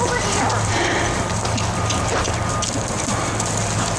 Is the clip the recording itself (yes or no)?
yes